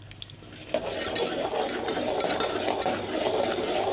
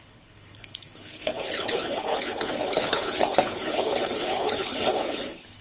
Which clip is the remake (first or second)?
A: second